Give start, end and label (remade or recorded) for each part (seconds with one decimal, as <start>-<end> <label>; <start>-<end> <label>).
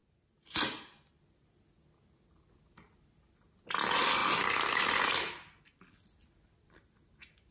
0.0-7.5 recorded